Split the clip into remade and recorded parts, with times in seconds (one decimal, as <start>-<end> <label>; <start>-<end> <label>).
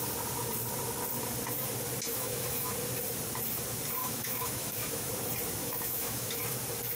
0.0-2.1 recorded; 2.1-2.7 remade; 2.7-4.0 recorded; 4.0-5.1 remade; 5.1-5.6 recorded; 5.6-6.4 remade; 6.4-7.0 recorded